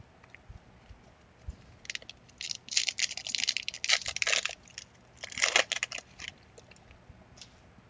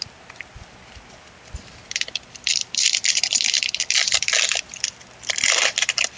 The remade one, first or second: second